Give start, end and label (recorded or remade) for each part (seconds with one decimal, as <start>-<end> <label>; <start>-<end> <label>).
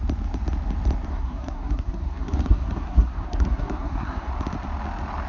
0.0-1.1 recorded; 1.1-4.3 remade; 4.3-5.3 recorded